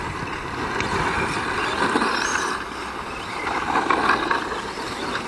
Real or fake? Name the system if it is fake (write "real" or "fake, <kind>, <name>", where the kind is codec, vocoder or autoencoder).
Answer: real